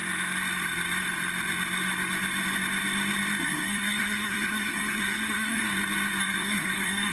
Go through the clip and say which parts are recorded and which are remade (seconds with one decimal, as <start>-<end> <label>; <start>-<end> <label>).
0.0-3.4 recorded; 3.4-5.6 remade; 5.6-6.2 recorded; 6.2-7.1 remade